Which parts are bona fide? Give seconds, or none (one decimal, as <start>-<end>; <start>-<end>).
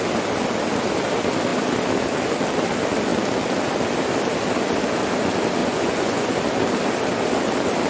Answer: 0.0-5.6; 6.3-7.9